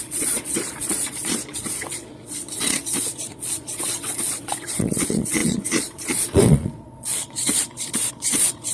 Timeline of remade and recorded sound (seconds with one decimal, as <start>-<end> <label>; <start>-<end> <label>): 0.0-8.7 remade